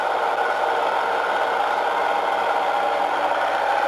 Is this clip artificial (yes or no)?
no